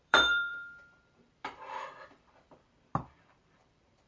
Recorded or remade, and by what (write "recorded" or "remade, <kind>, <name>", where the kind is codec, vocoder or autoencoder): remade, vocoder, BigVGAN v2